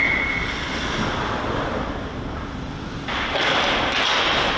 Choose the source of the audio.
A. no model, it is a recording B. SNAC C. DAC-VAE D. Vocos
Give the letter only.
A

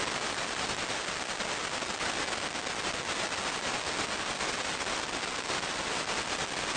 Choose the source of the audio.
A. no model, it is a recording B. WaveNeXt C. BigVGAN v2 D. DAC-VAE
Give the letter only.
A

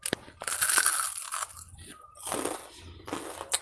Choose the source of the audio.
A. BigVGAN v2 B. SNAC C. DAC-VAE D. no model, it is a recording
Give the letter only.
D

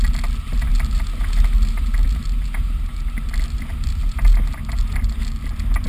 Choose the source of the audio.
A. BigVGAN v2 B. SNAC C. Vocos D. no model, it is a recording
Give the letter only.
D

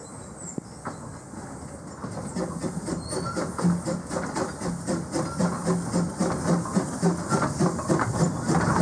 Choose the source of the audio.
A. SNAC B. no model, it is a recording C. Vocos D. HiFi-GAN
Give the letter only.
B